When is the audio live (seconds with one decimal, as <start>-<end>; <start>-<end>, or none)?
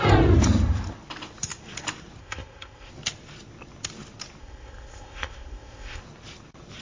0.0-2.2; 2.9-4.4; 6.0-6.8